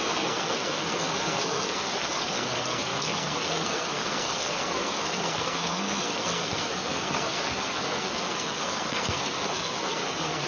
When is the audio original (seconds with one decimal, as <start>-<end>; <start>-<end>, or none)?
none